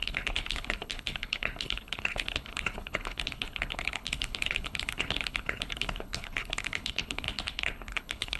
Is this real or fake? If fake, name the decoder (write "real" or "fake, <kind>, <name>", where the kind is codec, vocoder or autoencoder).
fake, codec, HILCodec